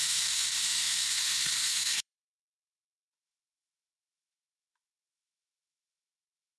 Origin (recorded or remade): remade